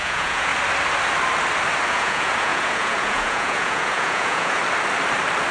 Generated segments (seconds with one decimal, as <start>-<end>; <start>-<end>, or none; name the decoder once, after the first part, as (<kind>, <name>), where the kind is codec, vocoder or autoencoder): 0.0-0.5 (vocoder, Vocos); 1.9-4.6